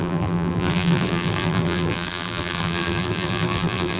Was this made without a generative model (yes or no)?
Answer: no